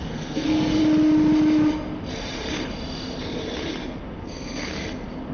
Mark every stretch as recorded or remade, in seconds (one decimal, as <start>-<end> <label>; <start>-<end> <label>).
0.0-0.8 remade; 0.8-4.0 recorded; 4.0-4.7 remade; 4.7-5.3 recorded